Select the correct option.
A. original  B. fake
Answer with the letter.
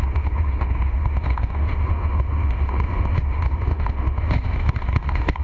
B